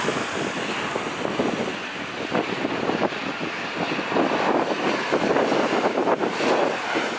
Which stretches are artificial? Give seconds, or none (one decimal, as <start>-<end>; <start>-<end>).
none